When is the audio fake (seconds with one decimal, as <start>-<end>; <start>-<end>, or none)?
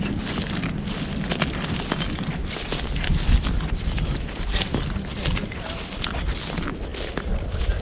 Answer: none